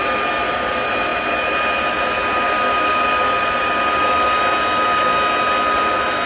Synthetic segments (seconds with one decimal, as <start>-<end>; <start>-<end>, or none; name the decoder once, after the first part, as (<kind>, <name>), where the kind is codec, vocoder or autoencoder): none

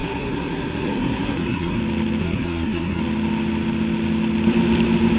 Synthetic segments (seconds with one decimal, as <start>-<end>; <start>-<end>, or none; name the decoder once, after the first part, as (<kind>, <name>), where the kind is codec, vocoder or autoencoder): 0.0-1.8 (codec, SNAC); 2.2-3.0

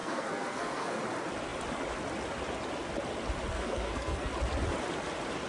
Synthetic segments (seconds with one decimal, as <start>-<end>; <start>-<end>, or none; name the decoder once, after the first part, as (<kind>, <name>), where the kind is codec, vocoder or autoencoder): 0.0-1.0 (codec, SNAC); 3.5-4.3

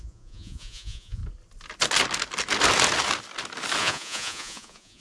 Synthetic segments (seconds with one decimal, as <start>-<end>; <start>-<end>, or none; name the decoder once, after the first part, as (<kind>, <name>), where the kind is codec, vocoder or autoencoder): 0.0-1.2 (vocoder, Vocos); 3.8-5.0

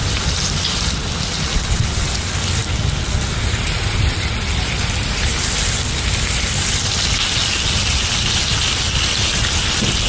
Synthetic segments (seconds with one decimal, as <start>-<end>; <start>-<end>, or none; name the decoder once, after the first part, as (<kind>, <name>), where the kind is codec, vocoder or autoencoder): none

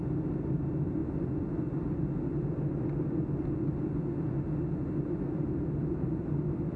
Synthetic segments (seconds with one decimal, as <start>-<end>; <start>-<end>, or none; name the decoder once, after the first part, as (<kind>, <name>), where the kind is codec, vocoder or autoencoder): none